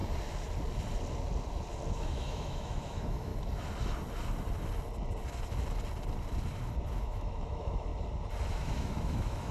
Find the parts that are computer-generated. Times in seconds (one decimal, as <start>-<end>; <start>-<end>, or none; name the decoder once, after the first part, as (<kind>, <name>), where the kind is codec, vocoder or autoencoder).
1.9-3.3 (autoencoder, DAC-VAE); 7.0-7.9; 8.5-9.5